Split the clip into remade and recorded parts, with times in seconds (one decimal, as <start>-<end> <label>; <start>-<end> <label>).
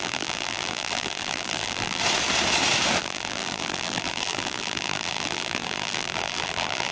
0.0-2.0 remade; 2.0-3.0 recorded; 3.0-6.9 remade